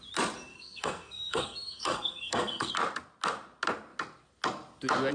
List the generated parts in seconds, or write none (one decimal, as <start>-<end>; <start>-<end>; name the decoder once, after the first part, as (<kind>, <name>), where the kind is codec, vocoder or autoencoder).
0.5-2.7 (codec, SNAC)